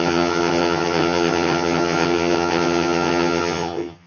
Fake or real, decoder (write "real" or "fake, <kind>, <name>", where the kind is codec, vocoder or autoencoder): fake, vocoder, HiFi-GAN